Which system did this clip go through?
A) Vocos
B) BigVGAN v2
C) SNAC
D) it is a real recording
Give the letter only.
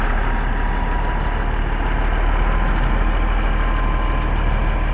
D